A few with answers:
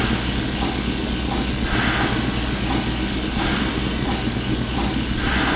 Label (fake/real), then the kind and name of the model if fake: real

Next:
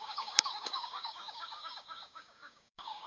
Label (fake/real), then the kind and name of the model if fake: fake, codec, DAC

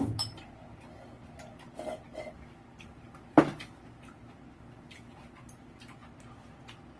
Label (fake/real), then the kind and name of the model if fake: real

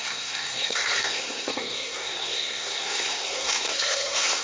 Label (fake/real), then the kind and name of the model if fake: fake, codec, SNAC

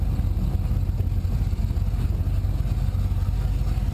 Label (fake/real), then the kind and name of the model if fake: real